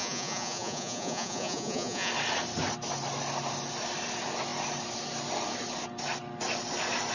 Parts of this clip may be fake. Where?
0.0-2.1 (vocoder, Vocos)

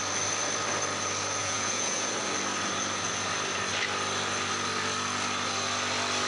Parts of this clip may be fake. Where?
1.4-2.1 (vocoder, Vocos)

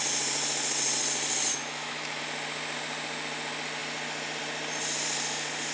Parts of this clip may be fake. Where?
1.5-2.2 (autoencoder, DAC-VAE)

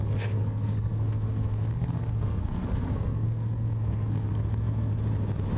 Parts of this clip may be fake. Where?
0.0-4.9 (codec, SNAC)

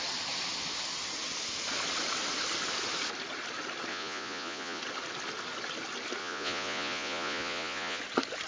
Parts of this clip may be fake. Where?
3.9-4.8 (vocoder, Vocos); 6.2-8.0

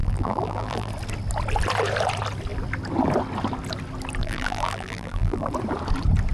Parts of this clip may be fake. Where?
0.0-0.9 (vocoder, BigVGAN v2); 4.2-5.5